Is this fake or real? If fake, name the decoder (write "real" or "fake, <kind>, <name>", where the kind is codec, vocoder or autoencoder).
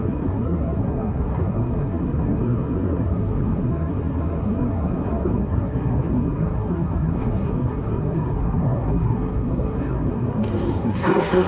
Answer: fake, codec, SNAC